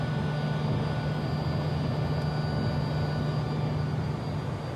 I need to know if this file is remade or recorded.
recorded